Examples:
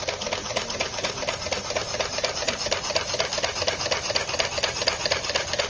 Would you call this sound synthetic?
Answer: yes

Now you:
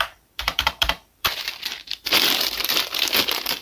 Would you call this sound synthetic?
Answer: yes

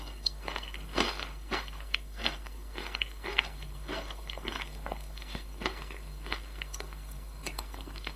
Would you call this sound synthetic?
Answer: yes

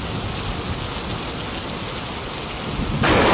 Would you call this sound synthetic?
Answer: no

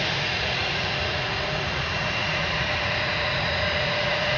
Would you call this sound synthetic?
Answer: yes